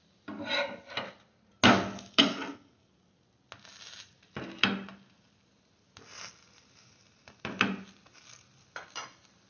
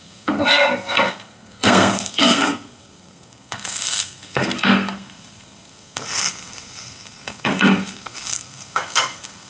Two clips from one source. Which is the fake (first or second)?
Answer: second